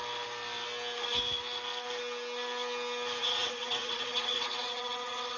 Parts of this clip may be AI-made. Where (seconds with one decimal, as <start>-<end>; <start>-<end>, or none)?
3.2-5.4